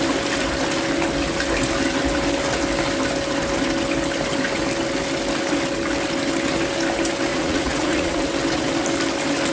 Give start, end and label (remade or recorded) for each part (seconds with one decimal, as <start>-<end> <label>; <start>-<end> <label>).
0.0-7.3 recorded; 7.3-8.2 remade; 8.2-9.5 recorded